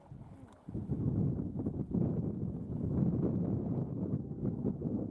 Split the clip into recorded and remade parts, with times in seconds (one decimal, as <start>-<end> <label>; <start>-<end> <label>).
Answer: 0.0-3.8 recorded; 3.8-5.1 remade